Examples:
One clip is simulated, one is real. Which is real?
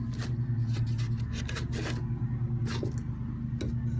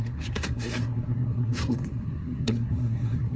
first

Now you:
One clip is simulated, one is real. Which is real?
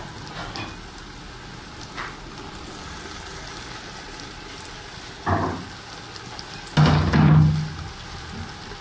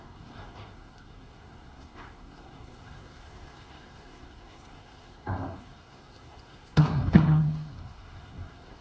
first